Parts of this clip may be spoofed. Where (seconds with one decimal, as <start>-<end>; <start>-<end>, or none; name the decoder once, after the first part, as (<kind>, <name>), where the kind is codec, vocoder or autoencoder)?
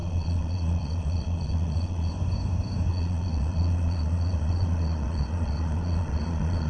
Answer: 0.0-2.1 (vocoder, Vocos); 2.9-6.7